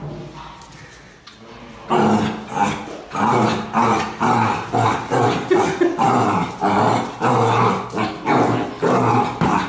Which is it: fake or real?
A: real